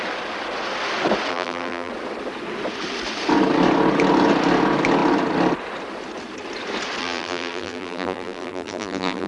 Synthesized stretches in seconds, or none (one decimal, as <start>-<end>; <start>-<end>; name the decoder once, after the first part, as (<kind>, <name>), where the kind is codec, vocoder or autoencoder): 1.3-1.9 (vocoder, BigVGAN v2); 7.0-9.3